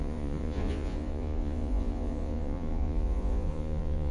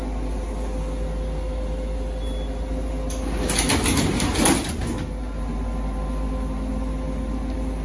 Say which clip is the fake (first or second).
first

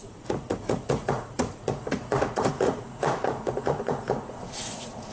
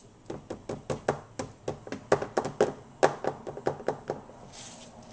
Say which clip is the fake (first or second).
first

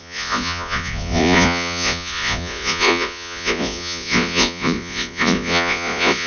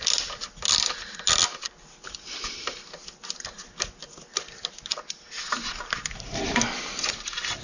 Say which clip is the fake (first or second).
first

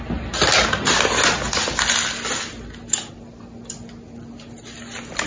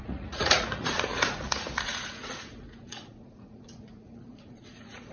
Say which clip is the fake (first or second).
second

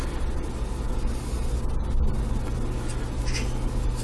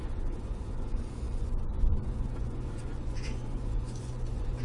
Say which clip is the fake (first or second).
second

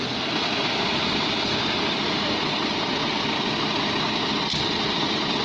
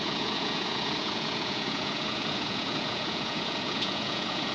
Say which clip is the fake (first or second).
second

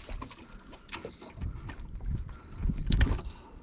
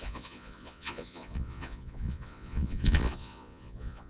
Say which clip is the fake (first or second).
second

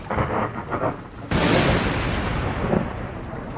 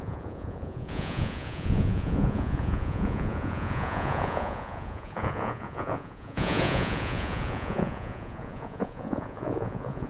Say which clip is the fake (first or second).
second